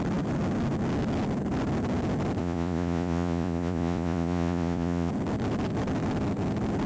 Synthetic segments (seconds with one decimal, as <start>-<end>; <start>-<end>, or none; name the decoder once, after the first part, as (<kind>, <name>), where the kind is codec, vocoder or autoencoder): 2.4-5.1 (vocoder, Vocos)